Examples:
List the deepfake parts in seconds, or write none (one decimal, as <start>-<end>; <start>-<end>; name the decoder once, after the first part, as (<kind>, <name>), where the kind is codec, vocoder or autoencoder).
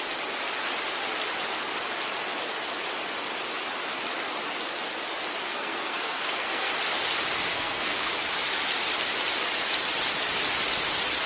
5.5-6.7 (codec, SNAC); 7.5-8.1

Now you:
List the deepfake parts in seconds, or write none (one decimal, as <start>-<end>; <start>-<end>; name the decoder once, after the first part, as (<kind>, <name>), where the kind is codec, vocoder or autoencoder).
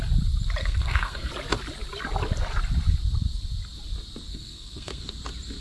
0.6-1.3 (codec, SNAC); 4.3-5.1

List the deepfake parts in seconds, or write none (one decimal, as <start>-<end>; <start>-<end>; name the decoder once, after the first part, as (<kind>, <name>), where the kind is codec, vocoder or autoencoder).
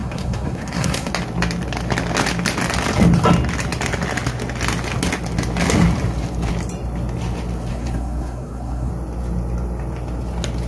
0.0-1.1 (codec, SNAC); 7.7-8.9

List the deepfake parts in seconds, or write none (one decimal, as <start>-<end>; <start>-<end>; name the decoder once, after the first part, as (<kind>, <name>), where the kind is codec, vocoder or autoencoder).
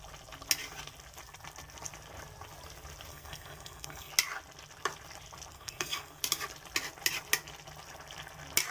3.1-4.1 (codec, SNAC); 5.5-6.2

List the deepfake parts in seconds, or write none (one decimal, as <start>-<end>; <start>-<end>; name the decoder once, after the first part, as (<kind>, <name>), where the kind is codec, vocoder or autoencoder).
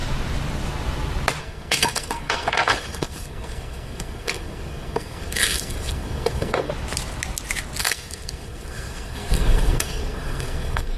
1.4-6.7 (codec, SNAC); 7.8-11.0